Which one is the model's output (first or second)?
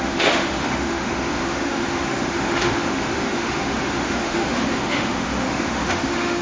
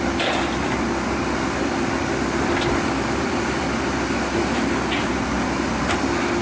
first